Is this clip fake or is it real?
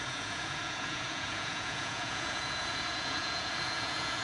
fake